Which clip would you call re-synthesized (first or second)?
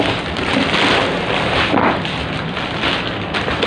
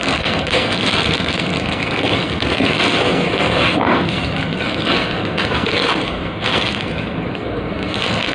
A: second